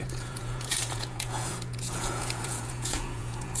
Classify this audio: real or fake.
fake